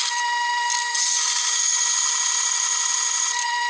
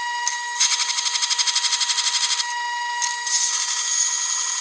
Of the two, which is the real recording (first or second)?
second